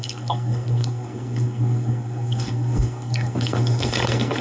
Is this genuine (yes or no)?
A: no